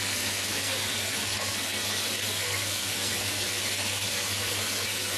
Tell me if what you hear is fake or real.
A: fake